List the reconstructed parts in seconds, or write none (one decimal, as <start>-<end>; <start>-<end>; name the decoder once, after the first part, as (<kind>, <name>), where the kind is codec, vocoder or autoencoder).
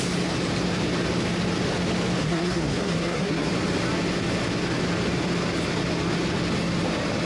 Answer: 2.2-3.5 (codec, SNAC)